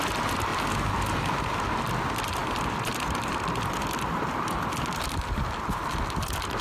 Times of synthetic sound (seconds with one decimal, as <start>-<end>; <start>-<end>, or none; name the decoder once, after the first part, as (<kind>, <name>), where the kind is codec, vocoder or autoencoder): 0.0-0.5 (vocoder, BigVGAN v2); 1.7-6.6